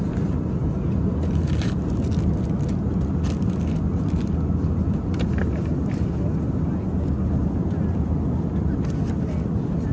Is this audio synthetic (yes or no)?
no